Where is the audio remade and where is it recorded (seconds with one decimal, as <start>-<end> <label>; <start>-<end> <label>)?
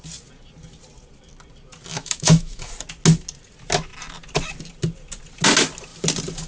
0.0-1.9 recorded; 1.9-2.7 remade; 2.7-6.5 recorded